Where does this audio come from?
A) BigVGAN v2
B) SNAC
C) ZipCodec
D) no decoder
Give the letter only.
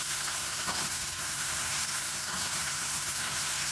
B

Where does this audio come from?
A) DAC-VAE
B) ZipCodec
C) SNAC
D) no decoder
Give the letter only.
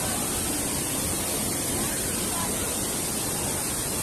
D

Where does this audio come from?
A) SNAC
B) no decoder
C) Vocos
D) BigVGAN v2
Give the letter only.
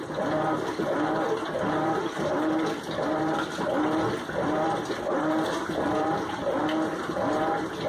B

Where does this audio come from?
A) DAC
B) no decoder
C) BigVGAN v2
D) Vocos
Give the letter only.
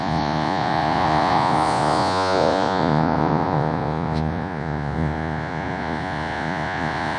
D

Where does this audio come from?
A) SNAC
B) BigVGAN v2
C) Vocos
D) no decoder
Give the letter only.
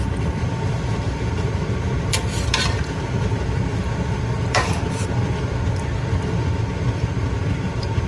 B